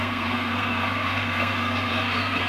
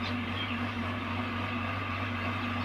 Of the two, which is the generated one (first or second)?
first